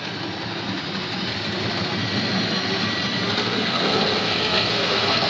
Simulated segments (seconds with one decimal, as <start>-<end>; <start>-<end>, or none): 3.4-5.3